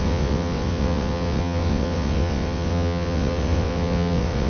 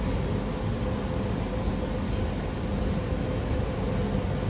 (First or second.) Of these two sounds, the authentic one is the second